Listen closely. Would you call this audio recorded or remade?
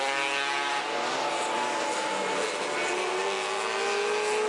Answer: recorded